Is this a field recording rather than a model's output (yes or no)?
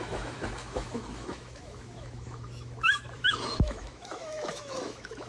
no